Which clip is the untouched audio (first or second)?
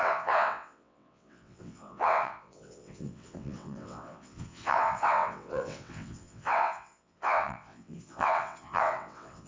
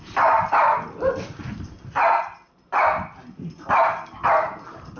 second